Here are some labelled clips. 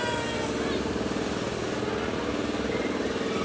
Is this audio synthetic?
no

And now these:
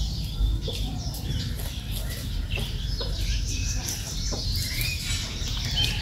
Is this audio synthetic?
yes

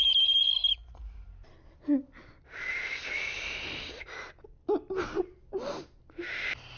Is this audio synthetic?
no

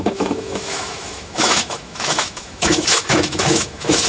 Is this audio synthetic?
yes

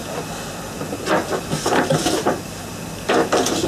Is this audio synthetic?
no